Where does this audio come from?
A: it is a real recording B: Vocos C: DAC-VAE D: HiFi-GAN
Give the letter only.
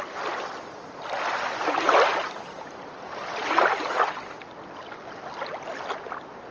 A